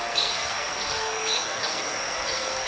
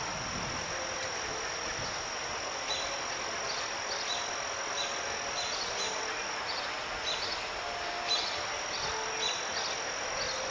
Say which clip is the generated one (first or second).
first